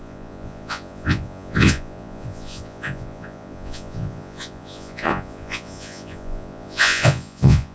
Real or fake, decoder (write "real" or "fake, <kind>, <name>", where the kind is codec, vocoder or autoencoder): fake, vocoder, Vocos